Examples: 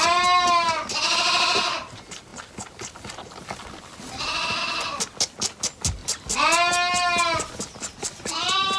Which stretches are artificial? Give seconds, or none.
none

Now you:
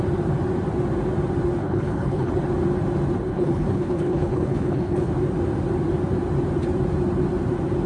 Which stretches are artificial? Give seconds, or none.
1.6-2.3; 3.3-5.1